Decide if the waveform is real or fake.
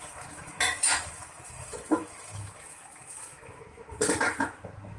fake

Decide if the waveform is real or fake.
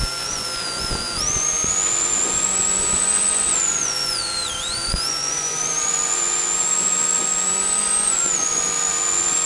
fake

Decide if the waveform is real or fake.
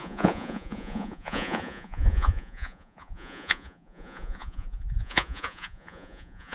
fake